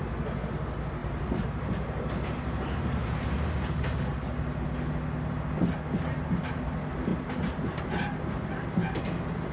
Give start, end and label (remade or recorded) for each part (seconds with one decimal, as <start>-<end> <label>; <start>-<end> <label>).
0.0-1.0 recorded; 1.0-3.5 remade; 3.5-9.5 recorded